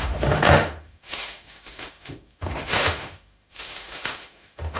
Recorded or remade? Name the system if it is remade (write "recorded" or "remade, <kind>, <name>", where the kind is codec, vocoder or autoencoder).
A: remade, autoencoder, DAC-VAE